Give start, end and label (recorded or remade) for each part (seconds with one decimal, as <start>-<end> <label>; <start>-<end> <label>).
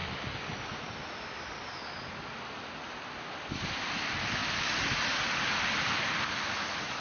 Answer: 0.0-7.0 recorded